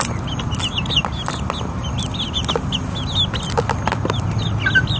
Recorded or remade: recorded